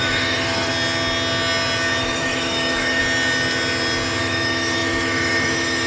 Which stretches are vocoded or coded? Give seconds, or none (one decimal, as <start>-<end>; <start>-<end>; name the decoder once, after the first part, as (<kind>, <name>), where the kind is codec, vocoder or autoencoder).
0.0-0.7 (autoencoder, DAC-VAE); 2.0-3.0; 4.2-5.9